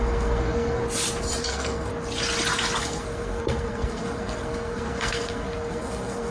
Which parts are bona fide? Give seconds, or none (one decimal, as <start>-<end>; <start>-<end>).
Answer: 0.8-1.4; 1.9-2.8